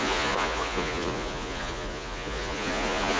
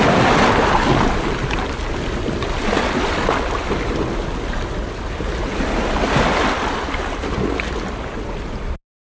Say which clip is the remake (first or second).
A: first